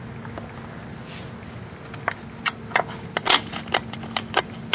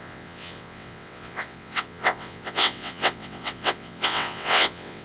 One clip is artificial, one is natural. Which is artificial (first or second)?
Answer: second